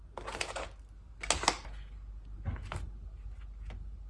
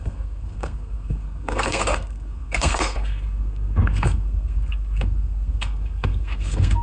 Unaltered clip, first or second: first